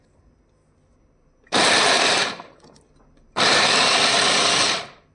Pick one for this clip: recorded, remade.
recorded